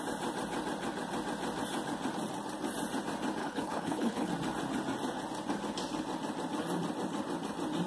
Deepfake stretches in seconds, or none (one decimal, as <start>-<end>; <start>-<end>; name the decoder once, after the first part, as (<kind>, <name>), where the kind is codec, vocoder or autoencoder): 3.4-4.3 (codec, HILCodec)